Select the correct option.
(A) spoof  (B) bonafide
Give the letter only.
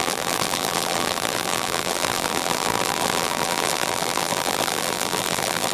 A